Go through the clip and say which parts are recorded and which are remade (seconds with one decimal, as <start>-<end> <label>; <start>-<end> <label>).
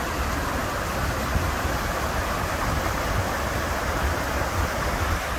0.0-5.4 recorded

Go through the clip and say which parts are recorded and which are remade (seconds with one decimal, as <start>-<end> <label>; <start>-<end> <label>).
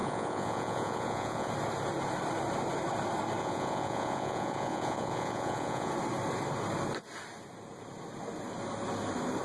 0.0-1.5 remade; 1.5-3.4 recorded; 3.4-5.9 remade; 5.9-9.4 recorded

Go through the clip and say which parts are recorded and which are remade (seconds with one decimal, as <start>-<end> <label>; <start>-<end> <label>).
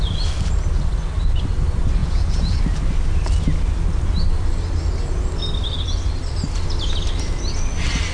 0.0-2.0 recorded; 2.0-2.6 remade; 2.6-8.1 recorded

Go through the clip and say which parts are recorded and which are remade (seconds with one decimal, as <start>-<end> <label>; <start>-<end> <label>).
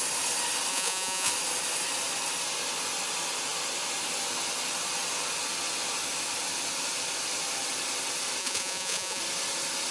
0.0-0.7 recorded; 0.7-1.3 remade; 1.3-8.4 recorded; 8.4-9.2 remade; 9.2-9.9 recorded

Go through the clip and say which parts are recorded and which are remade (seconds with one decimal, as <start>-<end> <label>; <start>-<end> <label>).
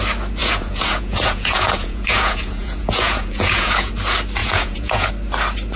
0.0-0.4 recorded; 0.4-3.9 remade; 3.9-4.4 recorded; 4.4-5.1 remade; 5.1-5.8 recorded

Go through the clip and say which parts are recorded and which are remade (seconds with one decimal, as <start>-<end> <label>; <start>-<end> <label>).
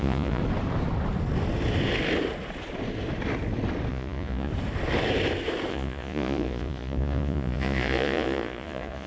0.0-0.4 remade; 0.4-3.9 recorded; 3.9-4.5 remade; 4.5-5.7 recorded; 5.7-9.1 remade